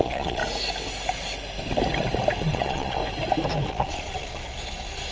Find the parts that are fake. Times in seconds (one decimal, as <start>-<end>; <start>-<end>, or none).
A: 0.0-0.4; 2.4-3.0; 3.7-5.1

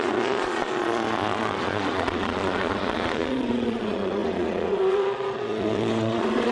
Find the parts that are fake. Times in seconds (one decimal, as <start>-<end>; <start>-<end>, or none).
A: 0.0-6.5

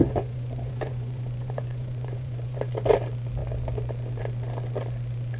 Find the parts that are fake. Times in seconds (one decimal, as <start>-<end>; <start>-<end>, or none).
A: 0.0-2.7